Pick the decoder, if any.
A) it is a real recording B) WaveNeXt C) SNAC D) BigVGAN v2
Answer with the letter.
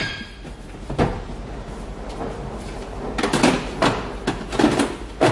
A